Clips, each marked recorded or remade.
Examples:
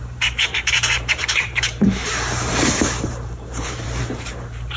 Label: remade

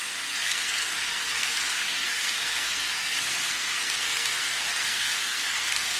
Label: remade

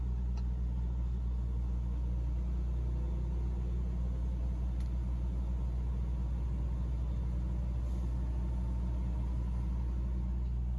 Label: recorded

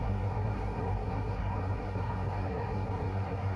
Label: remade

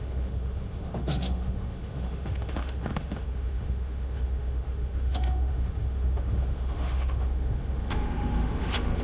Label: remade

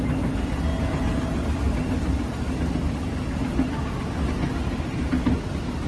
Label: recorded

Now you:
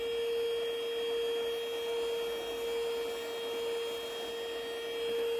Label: recorded